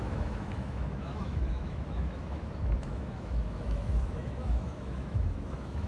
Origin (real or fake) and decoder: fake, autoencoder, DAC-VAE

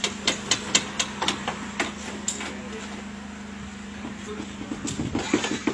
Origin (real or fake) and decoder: real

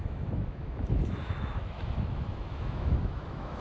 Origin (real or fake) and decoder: fake, autoencoder, DAC-VAE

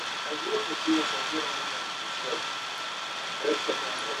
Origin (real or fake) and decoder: real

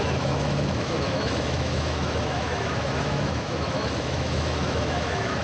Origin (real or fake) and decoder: fake, autoencoder, DAC-VAE